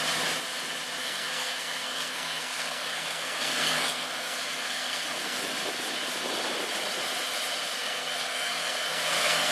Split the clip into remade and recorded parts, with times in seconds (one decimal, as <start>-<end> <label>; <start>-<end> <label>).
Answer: 0.0-1.0 recorded; 1.0-5.4 remade; 5.4-7.8 recorded; 7.8-9.5 remade